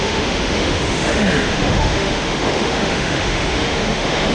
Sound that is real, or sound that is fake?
fake